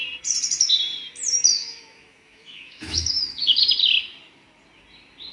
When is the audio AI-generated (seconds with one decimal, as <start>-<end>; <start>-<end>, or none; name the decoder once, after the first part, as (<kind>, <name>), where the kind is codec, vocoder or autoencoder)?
1.5-3.6 (autoencoder, DAC-VAE)